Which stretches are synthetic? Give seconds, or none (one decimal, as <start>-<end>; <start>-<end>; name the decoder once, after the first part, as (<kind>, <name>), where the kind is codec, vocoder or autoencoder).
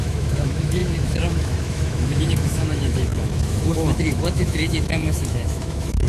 0.0-6.1 (autoencoder, DAC-VAE)